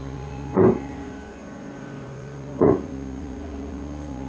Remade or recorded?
remade